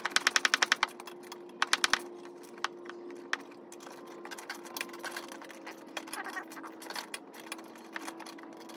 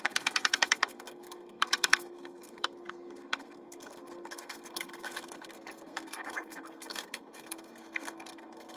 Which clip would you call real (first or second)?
first